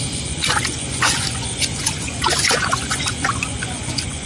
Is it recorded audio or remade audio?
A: remade